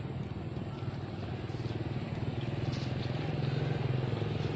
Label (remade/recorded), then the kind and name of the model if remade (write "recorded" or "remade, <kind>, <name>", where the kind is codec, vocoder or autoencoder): recorded